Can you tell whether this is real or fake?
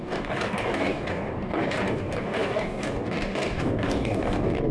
fake